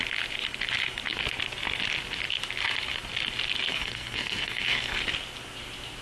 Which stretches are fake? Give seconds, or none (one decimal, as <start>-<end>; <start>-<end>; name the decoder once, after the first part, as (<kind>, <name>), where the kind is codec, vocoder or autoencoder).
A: 3.7-5.0 (codec, SNAC)